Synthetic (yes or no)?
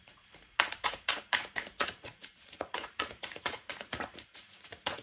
yes